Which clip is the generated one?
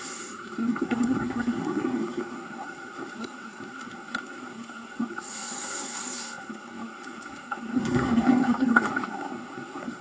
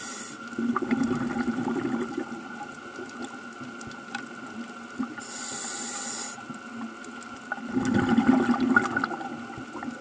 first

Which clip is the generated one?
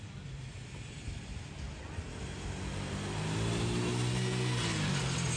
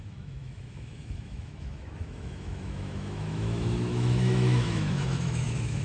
second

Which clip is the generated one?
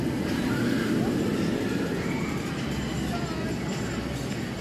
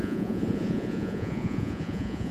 second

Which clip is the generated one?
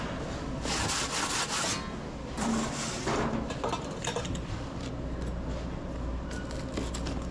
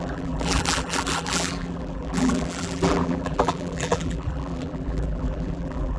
second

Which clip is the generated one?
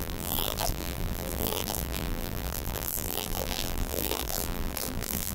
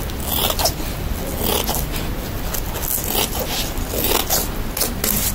first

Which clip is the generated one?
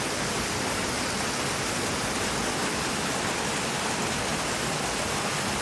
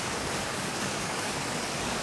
second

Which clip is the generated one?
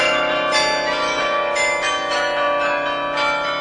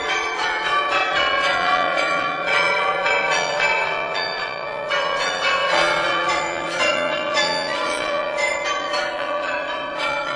second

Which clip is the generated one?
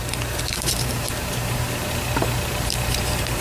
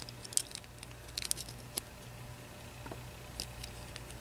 first